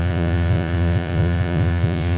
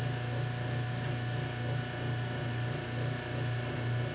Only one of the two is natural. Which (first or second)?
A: second